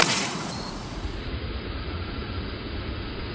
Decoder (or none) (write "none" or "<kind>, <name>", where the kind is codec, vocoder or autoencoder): vocoder, Vocos